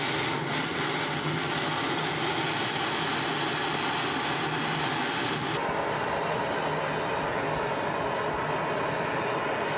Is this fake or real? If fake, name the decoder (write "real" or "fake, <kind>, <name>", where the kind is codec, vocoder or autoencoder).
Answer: real